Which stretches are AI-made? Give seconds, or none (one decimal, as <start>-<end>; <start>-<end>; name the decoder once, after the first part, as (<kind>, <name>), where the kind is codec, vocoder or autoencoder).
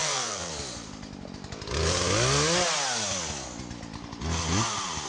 0.0-0.5 (vocoder, WaveNeXt)